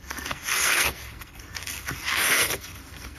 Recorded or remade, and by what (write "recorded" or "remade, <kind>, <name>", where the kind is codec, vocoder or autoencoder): remade, codec, SNAC